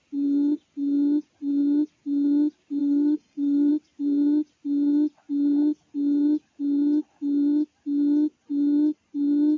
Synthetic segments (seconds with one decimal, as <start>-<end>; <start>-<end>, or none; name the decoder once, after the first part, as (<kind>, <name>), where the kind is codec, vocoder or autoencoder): 2.8-3.7 (codec, DAC)